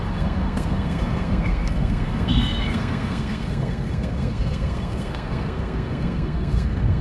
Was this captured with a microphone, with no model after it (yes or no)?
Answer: no